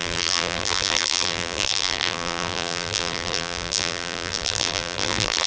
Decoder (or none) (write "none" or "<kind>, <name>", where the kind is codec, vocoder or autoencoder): vocoder, BigVGAN v2